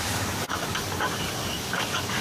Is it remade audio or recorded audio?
remade